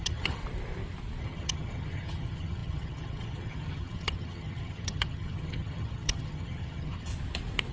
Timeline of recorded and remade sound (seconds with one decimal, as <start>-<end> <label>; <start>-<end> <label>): 0.0-0.4 remade; 0.4-1.2 recorded; 1.2-7.1 remade; 7.1-7.7 recorded